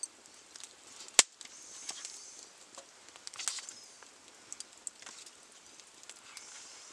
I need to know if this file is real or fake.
real